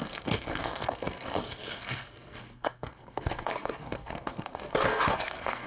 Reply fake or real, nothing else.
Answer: fake